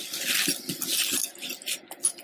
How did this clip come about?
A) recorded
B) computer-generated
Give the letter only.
A